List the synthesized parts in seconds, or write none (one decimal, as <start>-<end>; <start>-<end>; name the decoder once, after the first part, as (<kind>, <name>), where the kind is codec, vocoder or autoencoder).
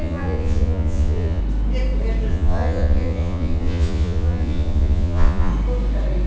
0.0-1.4 (vocoder, Vocos); 2.3-5.5